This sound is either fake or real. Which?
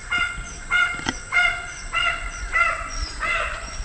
fake